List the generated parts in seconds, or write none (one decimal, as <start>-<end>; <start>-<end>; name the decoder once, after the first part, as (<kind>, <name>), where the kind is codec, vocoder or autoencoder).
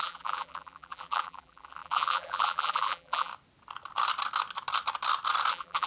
0.0-3.3 (vocoder, BigVGAN v2); 5.5-5.9